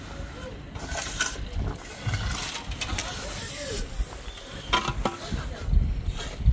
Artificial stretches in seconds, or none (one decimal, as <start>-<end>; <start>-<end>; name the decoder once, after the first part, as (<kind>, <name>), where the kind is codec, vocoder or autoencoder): none